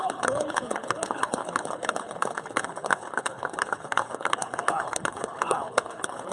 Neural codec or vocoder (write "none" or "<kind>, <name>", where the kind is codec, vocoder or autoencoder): codec, HILCodec